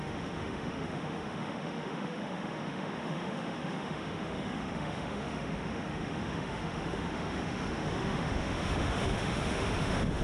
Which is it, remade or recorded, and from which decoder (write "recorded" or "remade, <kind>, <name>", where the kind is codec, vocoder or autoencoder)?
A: remade, autoencoder, DAC-VAE